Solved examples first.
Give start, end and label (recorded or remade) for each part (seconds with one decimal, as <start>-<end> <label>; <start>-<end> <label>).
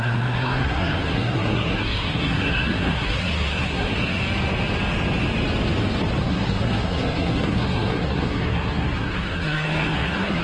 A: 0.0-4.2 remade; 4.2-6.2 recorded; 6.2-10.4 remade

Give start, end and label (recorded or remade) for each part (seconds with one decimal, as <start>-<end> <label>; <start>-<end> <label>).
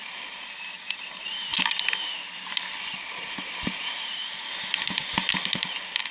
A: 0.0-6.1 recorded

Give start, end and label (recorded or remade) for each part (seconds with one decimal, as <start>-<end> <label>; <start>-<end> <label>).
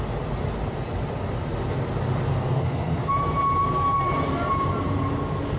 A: 0.0-2.3 recorded; 2.3-3.1 remade; 3.1-5.6 recorded